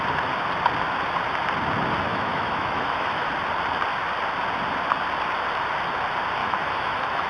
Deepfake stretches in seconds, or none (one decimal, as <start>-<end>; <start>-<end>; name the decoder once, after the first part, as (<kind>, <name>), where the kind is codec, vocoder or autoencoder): 2.1-3.3 (autoencoder, DAC-VAE); 6.4-7.3